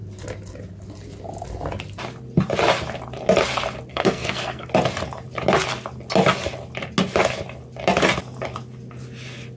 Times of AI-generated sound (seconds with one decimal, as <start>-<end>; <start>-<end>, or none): 3.9-4.7